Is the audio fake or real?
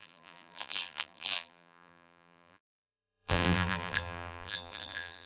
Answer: fake